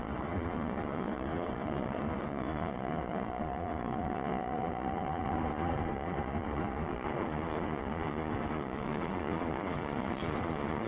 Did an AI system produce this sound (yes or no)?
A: yes